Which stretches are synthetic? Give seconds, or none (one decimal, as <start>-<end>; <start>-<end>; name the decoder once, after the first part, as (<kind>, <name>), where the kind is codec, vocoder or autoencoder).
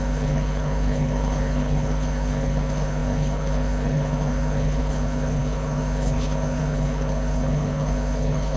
0.0-8.6 (codec, HILCodec)